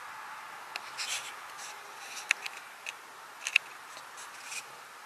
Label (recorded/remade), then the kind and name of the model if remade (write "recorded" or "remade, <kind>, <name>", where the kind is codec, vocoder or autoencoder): recorded